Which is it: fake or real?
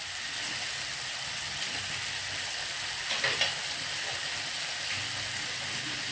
real